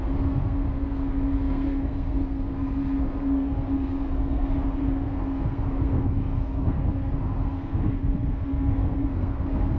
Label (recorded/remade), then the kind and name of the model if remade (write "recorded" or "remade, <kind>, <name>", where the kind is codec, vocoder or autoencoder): remade, codec, SNAC